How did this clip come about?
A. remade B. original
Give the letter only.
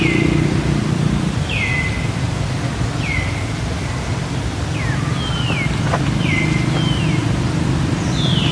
B